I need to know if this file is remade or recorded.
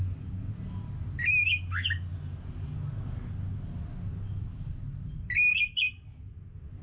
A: recorded